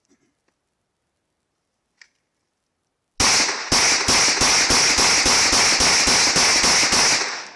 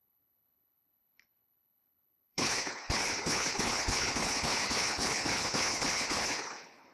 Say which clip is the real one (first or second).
first